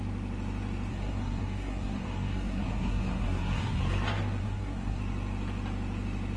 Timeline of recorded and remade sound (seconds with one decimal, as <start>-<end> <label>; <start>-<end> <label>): 0.0-0.9 recorded; 0.9-3.8 remade; 3.8-4.4 recorded; 4.4-5.0 remade; 5.0-6.4 recorded